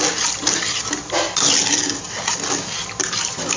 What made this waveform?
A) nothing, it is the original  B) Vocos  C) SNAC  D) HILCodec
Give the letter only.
A